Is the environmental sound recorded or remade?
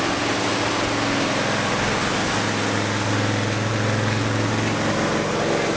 recorded